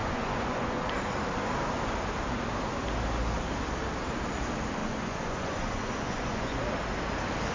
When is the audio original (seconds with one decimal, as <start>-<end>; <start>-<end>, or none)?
0.8-4.8; 6.6-7.5